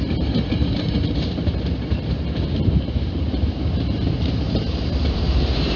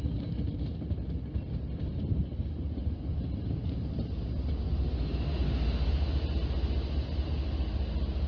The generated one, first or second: first